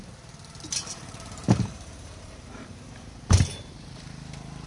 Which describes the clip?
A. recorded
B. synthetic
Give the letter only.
B